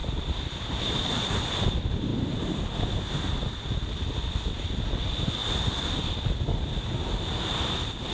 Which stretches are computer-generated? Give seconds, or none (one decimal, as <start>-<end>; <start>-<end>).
0.0-1.4